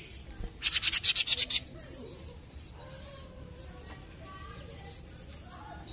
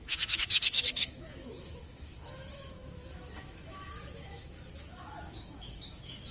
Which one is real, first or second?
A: first